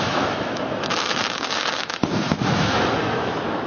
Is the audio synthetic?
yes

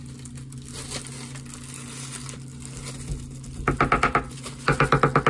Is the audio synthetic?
no